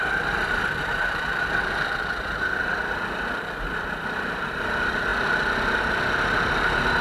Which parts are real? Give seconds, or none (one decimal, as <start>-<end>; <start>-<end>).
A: 0.0-7.0